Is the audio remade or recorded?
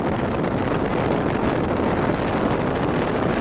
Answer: recorded